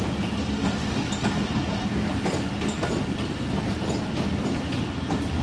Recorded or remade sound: recorded